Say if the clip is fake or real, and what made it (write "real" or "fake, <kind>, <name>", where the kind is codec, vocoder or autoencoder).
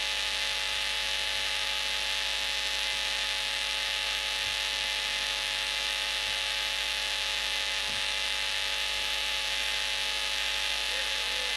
fake, autoencoder, DAC-VAE